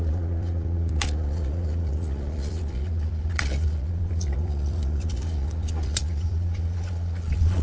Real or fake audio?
fake